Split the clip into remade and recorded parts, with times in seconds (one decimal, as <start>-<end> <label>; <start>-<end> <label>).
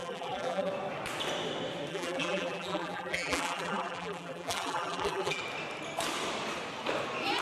0.0-0.7 remade; 0.7-1.9 recorded; 1.9-5.4 remade; 5.4-7.4 recorded